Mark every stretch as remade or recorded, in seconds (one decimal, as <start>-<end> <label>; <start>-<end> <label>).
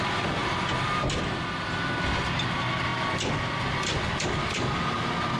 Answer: 0.0-0.4 recorded; 0.4-1.2 remade; 1.2-5.4 recorded